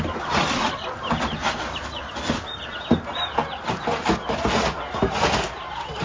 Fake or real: real